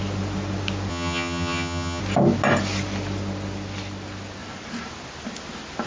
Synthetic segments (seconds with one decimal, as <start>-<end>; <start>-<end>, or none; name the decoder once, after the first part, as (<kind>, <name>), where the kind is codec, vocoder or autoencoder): 0.9-2.0 (vocoder, HiFi-GAN)